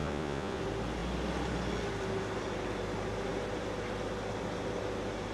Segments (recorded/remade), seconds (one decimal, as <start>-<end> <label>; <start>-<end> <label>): 0.0-0.6 remade; 0.6-5.3 recorded